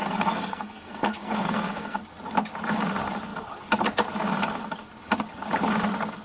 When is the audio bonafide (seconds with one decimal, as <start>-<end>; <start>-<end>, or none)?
2.0-6.2